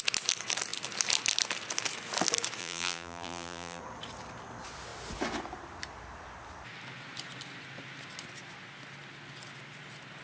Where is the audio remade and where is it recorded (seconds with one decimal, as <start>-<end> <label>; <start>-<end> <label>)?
0.0-2.6 recorded; 2.6-3.8 remade; 3.8-10.2 recorded